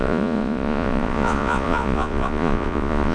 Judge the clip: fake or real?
fake